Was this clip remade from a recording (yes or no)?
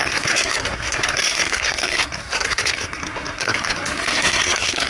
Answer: yes